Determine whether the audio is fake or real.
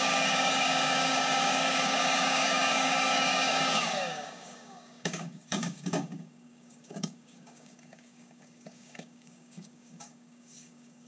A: fake